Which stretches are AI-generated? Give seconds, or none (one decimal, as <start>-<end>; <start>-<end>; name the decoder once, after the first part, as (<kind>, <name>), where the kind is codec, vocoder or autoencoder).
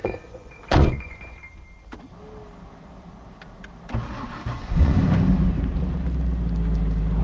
0.0-1.4 (vocoder, Vocos); 4.4-5.0